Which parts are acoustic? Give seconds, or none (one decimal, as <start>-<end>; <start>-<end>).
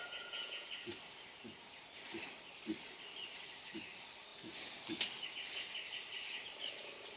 0.7-7.2